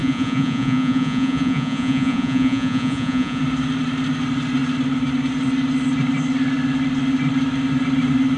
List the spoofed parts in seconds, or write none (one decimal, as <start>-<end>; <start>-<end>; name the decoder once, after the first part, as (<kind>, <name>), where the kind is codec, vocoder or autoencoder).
0.0-3.4 (vocoder, Vocos)